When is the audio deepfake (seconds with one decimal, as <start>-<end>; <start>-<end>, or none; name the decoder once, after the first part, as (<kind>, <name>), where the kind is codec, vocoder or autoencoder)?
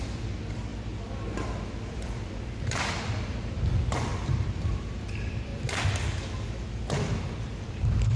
0.0-0.7 (vocoder, BigVGAN v2); 1.9-5.5; 7.2-8.2